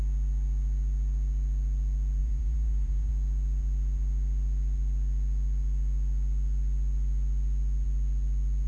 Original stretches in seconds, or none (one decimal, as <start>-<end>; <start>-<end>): 0.0-2.2; 3.1-8.7